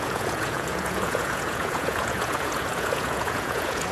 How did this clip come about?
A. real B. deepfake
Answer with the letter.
B